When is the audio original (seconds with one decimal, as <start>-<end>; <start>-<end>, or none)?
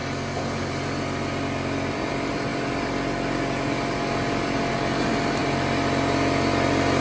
0.0-7.0